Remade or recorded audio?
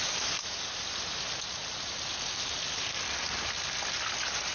recorded